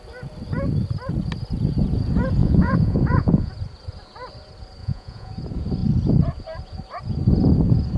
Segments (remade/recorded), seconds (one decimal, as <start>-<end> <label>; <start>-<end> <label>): 0.0-2.4 recorded; 2.4-3.5 remade; 3.5-4.8 recorded; 4.8-5.3 remade; 5.3-8.0 recorded